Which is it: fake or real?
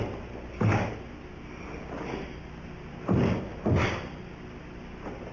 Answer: real